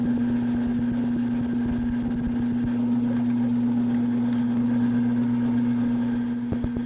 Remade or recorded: recorded